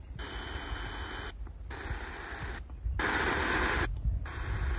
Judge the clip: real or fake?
real